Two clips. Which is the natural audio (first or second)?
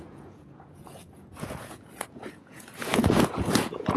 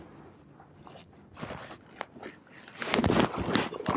second